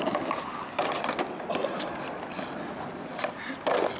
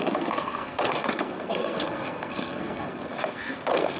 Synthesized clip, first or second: second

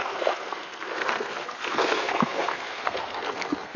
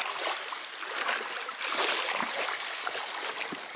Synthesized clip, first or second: first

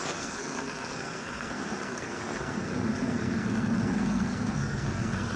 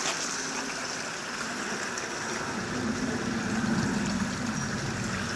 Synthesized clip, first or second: first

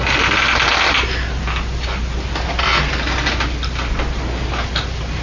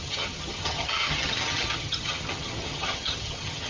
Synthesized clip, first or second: second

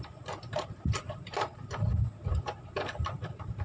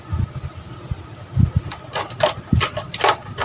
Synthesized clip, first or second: first